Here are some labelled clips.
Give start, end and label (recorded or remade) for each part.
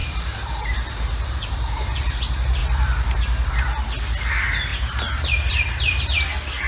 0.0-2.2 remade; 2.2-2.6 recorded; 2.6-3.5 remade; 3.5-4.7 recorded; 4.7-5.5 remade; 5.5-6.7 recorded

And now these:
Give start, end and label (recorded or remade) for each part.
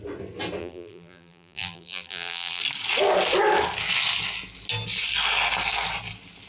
0.0-0.6 recorded; 0.6-2.6 remade; 2.6-6.5 recorded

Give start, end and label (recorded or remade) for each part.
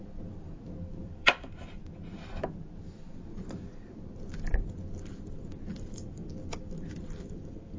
0.0-1.0 recorded; 1.0-1.8 remade; 1.8-5.7 recorded; 5.7-6.3 remade; 6.3-7.0 recorded; 7.0-7.8 remade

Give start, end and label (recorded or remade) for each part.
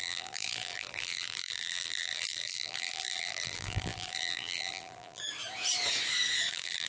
0.0-5.2 remade; 5.2-6.5 recorded; 6.5-6.9 remade